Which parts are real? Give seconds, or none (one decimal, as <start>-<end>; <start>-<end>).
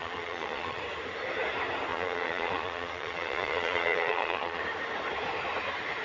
0.8-1.9; 4.6-6.0